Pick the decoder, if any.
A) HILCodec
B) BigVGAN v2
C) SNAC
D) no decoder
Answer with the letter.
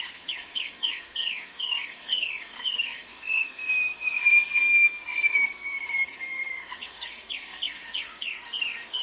C